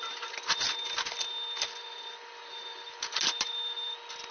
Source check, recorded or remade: recorded